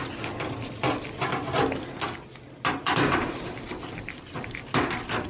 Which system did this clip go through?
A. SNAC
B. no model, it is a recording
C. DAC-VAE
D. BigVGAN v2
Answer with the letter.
B